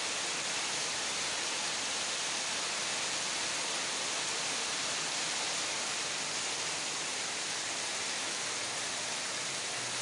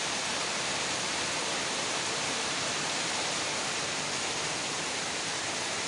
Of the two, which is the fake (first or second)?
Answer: second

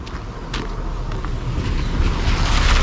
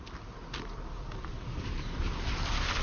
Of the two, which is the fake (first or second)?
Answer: second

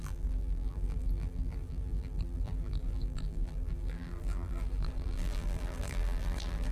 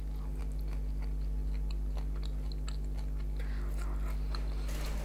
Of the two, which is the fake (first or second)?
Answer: first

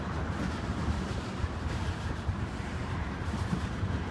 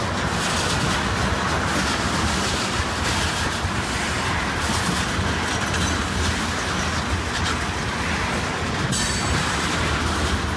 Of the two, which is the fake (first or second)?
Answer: first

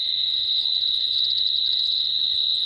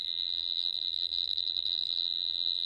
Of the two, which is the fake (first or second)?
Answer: second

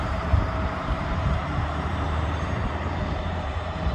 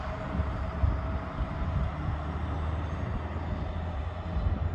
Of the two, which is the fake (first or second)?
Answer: first